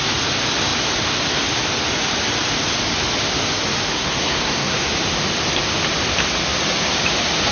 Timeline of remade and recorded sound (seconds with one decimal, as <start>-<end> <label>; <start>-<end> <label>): 0.0-3.9 recorded; 3.9-4.9 remade; 4.9-7.5 recorded